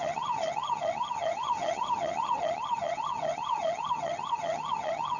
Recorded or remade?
remade